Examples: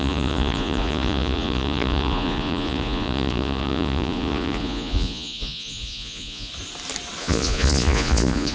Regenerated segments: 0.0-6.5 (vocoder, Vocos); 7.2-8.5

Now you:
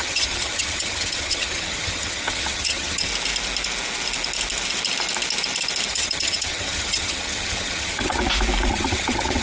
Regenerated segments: 0.0-3.1 (vocoder, HiFi-GAN); 5.9-8.2; 8.7-9.4

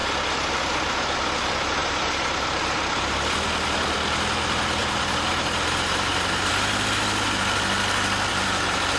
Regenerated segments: 1.8-2.6 (vocoder, BigVGAN v2); 4.8-6.5; 8.3-9.0

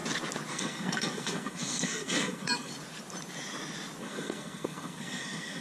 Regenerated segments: 0.5-2.7 (codec, SNAC); 4.0-5.6

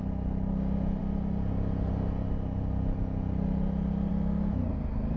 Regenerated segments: none

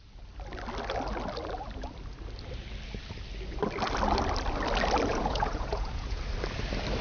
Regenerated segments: 5.1-6.2 (vocoder, Vocos)

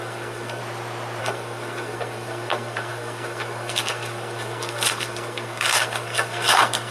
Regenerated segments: 0.0-0.6 (codec, SNAC); 1.2-6.9